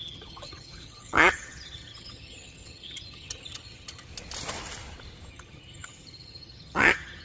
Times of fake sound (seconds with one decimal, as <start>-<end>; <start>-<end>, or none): 0.0-4.1; 5.3-7.2